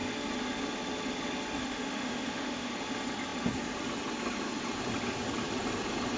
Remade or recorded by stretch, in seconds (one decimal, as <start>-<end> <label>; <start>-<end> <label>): 0.0-1.6 recorded; 1.6-2.7 remade; 2.7-6.2 recorded